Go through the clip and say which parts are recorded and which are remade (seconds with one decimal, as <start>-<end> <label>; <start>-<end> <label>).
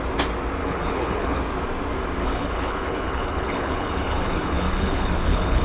0.0-0.6 recorded; 0.6-1.4 remade; 1.4-2.2 recorded; 2.2-5.6 remade